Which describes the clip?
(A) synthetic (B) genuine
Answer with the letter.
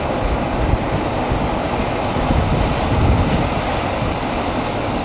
B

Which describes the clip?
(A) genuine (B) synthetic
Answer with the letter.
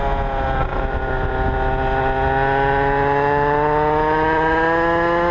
A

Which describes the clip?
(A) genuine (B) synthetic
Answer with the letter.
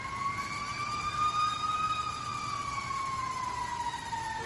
A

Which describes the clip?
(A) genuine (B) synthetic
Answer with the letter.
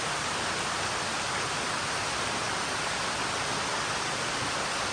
A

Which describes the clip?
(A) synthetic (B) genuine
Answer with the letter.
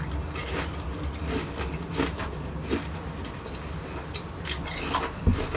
B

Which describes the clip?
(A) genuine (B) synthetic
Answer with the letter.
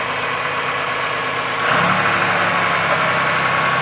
A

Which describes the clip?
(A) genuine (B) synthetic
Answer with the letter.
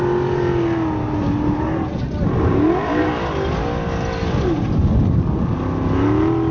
A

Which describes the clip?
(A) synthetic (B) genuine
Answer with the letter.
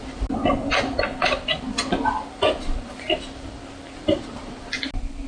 B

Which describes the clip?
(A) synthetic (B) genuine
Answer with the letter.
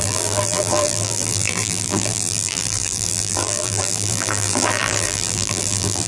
A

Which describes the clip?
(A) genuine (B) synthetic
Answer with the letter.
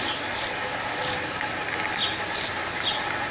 A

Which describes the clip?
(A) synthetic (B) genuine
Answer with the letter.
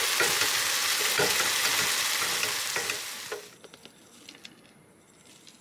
B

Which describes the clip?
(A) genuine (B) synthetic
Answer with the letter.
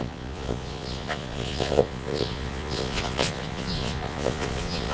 B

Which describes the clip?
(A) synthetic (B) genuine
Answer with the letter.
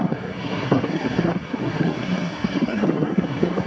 A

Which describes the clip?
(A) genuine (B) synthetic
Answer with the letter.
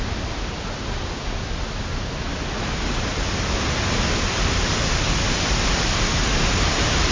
A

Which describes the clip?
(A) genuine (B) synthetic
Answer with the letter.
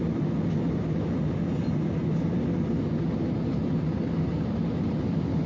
A